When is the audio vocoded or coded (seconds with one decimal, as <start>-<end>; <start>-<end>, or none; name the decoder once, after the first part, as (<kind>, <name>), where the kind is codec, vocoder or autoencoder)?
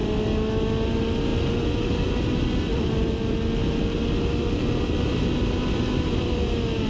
none